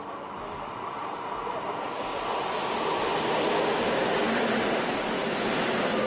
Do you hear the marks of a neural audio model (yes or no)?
no